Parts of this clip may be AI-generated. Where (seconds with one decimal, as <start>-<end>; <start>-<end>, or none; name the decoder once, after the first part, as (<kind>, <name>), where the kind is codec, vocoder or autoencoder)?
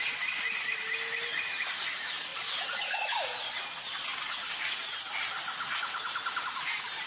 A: none